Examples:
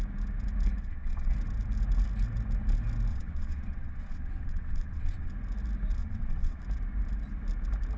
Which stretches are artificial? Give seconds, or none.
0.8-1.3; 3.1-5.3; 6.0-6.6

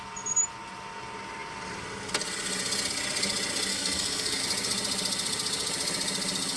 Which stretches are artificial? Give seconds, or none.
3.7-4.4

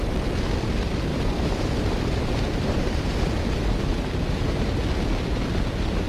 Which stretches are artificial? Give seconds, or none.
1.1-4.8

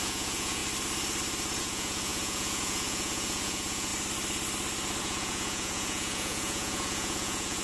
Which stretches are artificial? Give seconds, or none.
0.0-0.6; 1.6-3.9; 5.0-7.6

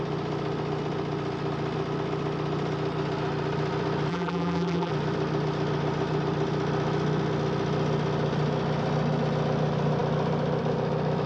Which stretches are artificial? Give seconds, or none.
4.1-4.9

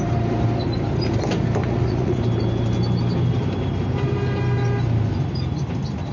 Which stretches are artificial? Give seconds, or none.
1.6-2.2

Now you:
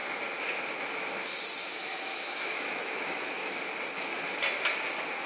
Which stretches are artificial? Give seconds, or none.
1.7-3.6

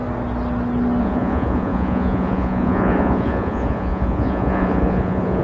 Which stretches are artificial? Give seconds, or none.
1.0-5.4